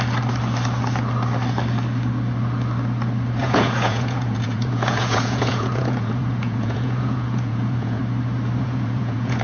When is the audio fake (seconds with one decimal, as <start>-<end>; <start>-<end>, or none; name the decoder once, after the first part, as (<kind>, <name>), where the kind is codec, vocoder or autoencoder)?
3.4-8.0 (vocoder, Vocos); 8.6-9.4